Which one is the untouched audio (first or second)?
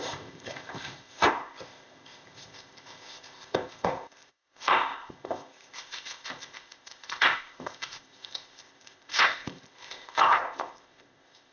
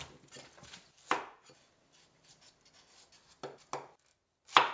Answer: second